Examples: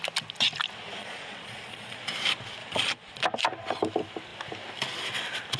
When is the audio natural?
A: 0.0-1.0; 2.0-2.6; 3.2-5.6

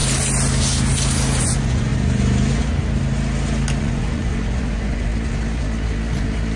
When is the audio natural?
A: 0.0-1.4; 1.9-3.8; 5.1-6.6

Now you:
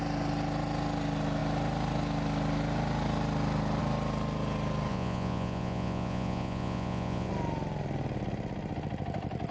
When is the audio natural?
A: 0.0-4.9; 7.3-9.5

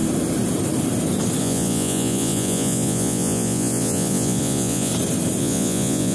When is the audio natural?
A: 0.0-1.4; 4.9-5.4

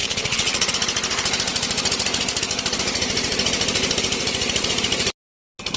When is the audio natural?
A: 0.7-5.8